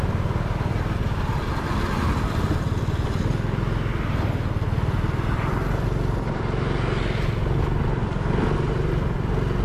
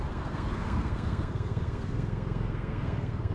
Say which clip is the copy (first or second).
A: second